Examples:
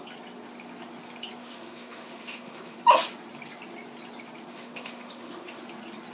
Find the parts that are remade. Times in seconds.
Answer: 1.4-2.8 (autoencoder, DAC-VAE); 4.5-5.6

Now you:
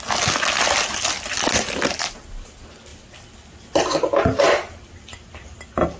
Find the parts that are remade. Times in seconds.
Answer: none